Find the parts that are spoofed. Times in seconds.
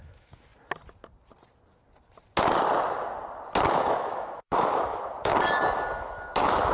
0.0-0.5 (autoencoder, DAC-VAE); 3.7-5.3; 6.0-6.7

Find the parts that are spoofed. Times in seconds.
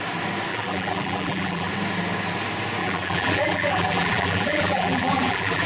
0.5-1.7 (vocoder, BigVGAN v2); 2.8-5.7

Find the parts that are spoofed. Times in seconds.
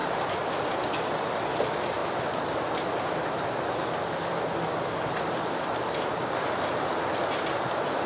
none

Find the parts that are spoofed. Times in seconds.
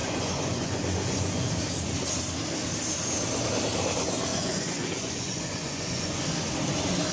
0.0-1.5 (vocoder, Vocos); 4.3-6.2